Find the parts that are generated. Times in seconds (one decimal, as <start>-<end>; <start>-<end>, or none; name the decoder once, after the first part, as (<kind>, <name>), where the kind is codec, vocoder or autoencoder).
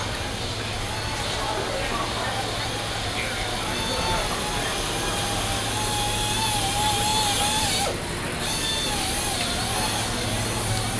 none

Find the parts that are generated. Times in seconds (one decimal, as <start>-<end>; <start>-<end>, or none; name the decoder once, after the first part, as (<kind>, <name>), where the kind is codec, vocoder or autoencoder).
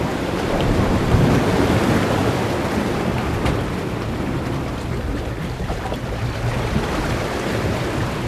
0.0-2.2 (vocoder, BigVGAN v2); 5.1-6.0; 6.9-8.3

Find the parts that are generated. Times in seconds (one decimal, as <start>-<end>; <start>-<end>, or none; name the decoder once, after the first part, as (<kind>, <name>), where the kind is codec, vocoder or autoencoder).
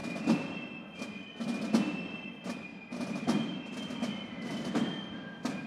none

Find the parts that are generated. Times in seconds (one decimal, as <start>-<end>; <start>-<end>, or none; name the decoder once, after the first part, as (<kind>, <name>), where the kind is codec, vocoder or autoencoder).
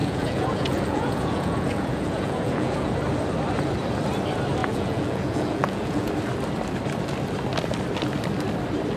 0.0-2.9 (vocoder, Vocos); 4.6-6.1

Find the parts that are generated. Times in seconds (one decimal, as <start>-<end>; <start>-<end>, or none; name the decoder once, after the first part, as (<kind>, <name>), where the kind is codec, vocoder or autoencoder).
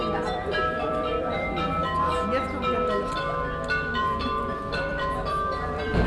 0.0-1.8 (vocoder, BigVGAN v2); 4.0-6.1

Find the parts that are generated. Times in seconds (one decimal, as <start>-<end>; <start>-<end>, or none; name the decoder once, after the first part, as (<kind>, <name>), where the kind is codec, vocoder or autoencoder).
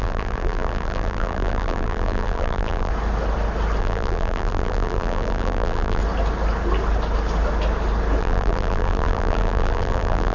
0.0-2.9 (vocoder, BigVGAN v2); 3.8-6.0; 8.2-10.3